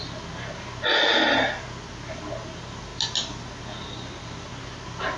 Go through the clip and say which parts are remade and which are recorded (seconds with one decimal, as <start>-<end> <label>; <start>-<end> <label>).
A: 0.0-5.2 recorded